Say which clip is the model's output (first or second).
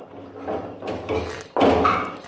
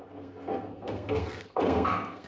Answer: second